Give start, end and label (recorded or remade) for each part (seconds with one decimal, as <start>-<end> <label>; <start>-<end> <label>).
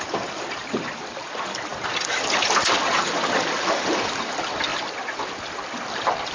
0.0-6.3 remade